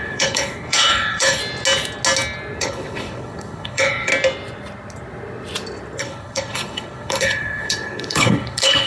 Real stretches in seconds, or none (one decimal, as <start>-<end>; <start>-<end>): 1.4-2.6; 4.1-6.0